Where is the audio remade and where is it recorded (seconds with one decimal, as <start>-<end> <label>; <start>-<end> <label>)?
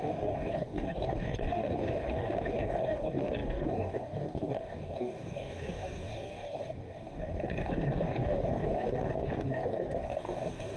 0.0-10.8 remade